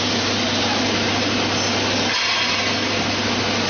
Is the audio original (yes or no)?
yes